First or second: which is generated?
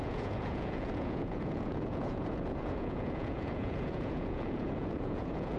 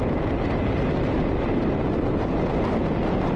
first